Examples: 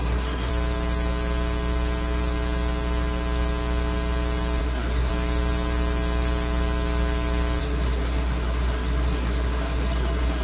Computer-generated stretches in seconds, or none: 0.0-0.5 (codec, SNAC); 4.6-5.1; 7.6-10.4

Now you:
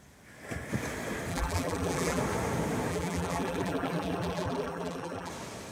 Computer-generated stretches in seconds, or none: 1.3-2.2 (vocoder, BigVGAN v2); 2.9-5.3

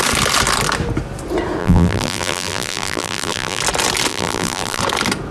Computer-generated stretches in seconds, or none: 1.6-3.6 (vocoder, BigVGAN v2); 4.1-4.8

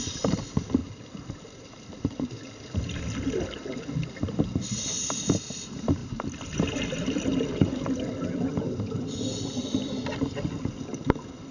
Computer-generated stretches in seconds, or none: none

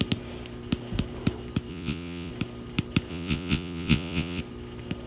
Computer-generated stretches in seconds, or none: 1.7-2.3 (vocoder, Vocos); 3.1-4.4